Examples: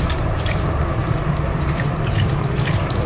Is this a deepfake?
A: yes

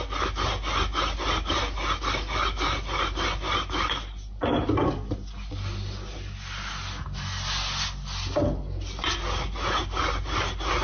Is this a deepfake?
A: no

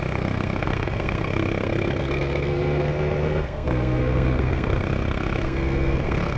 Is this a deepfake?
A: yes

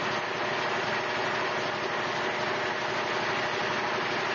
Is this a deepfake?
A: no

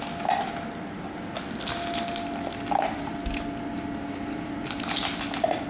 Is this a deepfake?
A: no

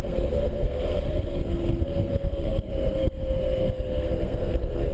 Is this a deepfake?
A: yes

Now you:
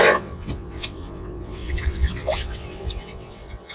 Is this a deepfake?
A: yes